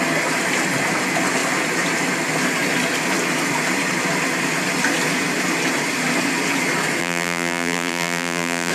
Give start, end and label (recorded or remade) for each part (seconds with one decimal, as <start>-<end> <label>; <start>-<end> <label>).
0.0-7.0 recorded; 7.0-8.7 remade